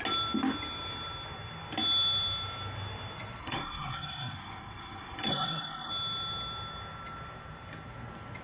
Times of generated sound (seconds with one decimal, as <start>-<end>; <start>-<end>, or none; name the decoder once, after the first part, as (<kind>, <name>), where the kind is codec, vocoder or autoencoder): 3.4-5.9 (codec, SNAC)